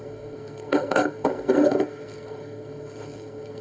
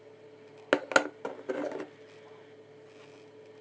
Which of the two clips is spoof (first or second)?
first